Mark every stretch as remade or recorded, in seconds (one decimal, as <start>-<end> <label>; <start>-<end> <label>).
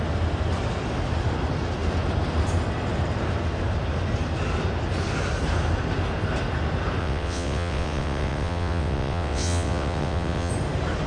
0.0-7.0 recorded; 7.0-10.5 remade; 10.5-11.1 recorded